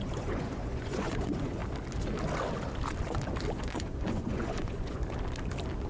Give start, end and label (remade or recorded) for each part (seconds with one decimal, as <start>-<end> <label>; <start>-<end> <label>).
0.0-1.6 remade; 1.6-3.5 recorded; 3.5-5.0 remade; 5.0-5.9 recorded